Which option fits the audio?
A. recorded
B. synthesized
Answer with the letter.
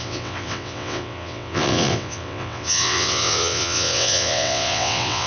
B